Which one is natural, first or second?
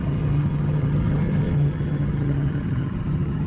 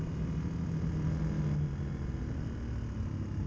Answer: second